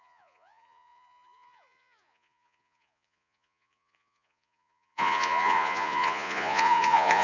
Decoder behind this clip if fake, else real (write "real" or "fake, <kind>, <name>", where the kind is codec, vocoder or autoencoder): fake, vocoder, Vocos